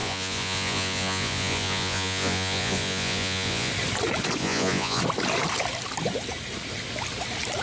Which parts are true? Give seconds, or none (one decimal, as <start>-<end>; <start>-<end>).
3.7-4.4; 5.0-7.6